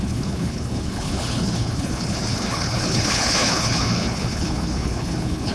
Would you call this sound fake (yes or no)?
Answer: yes